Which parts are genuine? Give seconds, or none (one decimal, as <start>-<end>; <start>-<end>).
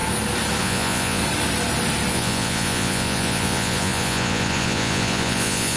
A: 0.0-0.6; 1.2-2.1